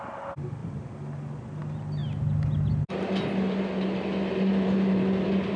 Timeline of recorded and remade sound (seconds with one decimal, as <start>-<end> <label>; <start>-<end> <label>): 0.0-5.6 recorded